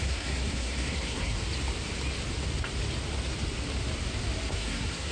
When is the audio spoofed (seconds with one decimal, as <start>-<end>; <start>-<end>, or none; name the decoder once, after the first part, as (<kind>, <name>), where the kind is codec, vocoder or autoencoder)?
0.0-1.4 (codec, SNAC); 4.5-5.1